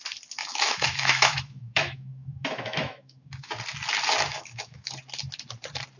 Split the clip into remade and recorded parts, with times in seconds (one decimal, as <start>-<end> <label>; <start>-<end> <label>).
0.0-0.4 recorded; 0.4-3.5 remade; 3.5-4.3 recorded; 4.3-4.9 remade; 4.9-6.0 recorded